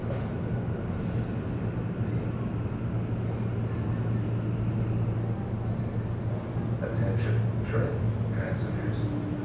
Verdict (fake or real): real